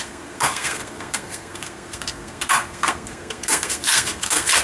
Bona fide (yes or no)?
no